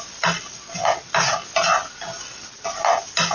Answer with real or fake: real